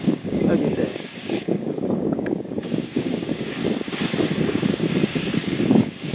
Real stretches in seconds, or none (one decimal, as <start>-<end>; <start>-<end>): 3.6-4.4